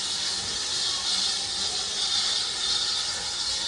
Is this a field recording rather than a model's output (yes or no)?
yes